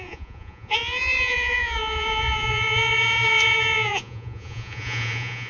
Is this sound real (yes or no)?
no